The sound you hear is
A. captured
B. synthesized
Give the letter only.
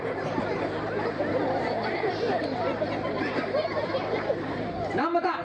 B